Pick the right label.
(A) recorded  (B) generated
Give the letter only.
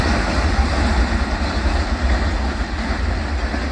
A